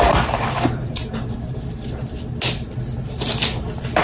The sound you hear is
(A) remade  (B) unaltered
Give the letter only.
B